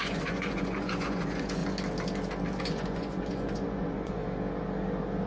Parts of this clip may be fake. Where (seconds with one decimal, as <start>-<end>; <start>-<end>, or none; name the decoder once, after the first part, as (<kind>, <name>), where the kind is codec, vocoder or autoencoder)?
0.0-1.6 (vocoder, Vocos); 2.6-4.2